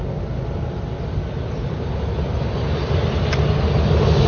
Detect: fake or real real